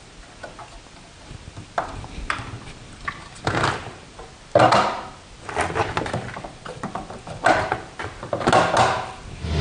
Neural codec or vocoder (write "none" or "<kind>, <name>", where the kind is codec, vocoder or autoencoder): none